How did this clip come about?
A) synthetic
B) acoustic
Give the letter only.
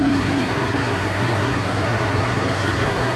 A